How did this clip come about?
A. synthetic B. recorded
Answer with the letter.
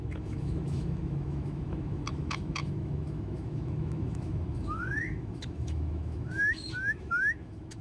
A